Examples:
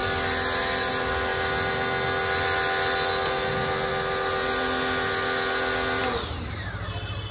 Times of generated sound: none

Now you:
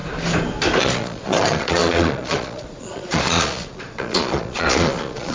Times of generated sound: 0.8-5.3 (vocoder, Vocos)

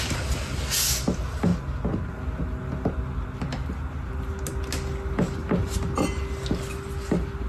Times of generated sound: none

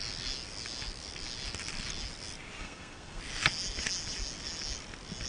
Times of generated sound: 2.6-3.2 (codec, SNAC)

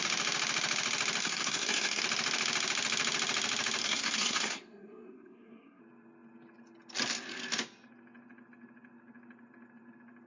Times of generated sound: 1.2-2.0 (codec, SNAC); 3.8-5.8